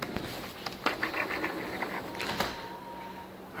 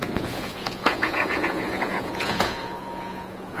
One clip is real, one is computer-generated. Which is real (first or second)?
first